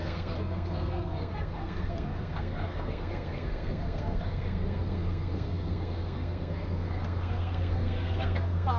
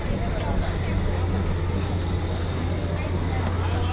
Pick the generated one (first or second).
first